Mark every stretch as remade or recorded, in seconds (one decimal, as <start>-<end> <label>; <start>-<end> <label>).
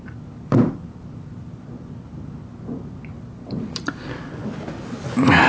0.0-5.5 recorded